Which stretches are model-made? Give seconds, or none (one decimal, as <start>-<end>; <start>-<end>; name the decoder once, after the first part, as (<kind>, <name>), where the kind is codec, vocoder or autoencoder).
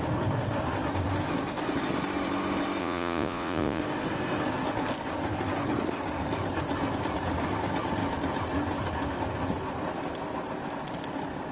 2.8-3.8 (vocoder, Vocos)